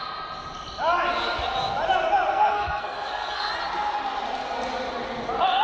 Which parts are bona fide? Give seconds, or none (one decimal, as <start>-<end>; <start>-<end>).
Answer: 0.0-2.3; 3.5-5.6